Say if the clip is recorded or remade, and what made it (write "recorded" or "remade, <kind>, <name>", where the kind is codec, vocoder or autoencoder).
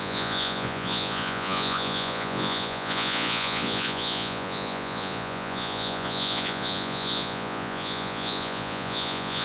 remade, vocoder, Vocos